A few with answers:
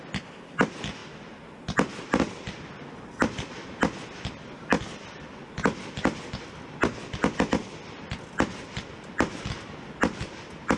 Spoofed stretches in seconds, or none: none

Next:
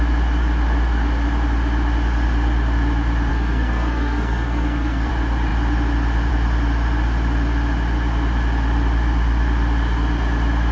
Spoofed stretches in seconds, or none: 3.3-5.1

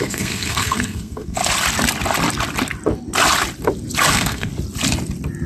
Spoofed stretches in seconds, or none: 0.0-1.4; 4.1-4.5